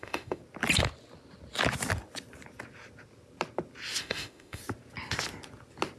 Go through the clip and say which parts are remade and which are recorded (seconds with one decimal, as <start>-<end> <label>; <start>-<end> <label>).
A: 0.0-0.4 remade; 0.4-4.0 recorded; 4.0-4.6 remade; 4.6-6.0 recorded